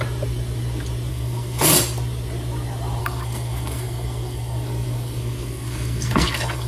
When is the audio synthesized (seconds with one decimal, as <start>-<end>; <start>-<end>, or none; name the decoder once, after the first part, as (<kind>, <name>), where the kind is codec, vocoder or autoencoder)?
1.1-1.7 (codec, SNAC); 3.0-6.7